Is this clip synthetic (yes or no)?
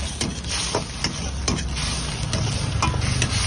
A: no